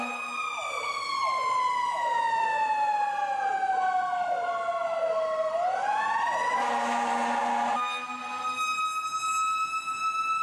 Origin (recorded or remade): recorded